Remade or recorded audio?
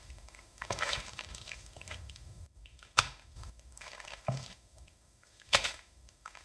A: remade